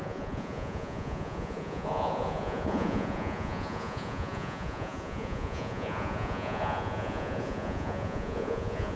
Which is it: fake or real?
fake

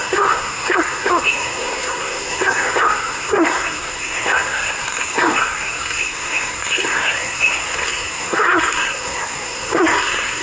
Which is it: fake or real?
fake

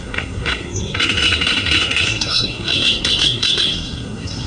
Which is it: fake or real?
fake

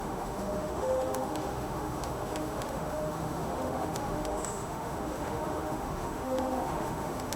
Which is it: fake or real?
fake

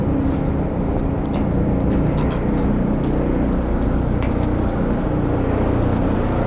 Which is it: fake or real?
real